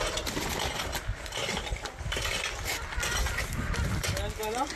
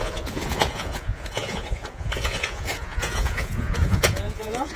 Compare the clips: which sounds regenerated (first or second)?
second